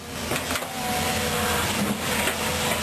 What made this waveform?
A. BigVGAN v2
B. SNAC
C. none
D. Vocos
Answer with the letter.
C